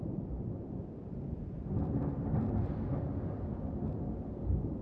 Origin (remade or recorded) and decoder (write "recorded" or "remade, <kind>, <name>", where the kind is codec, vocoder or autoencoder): remade, vocoder, BigVGAN v2